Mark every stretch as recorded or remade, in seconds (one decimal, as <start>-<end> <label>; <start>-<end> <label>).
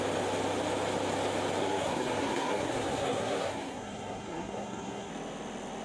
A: 0.0-1.6 recorded; 1.6-5.1 remade; 5.1-5.8 recorded